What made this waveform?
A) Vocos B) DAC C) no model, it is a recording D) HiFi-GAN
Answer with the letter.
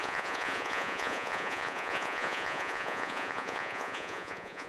A